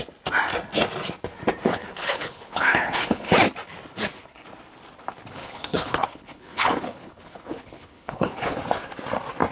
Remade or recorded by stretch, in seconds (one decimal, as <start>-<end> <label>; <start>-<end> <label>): 0.0-1.7 recorded; 1.7-3.3 remade; 3.3-5.4 recorded; 5.4-8.6 remade; 8.6-9.5 recorded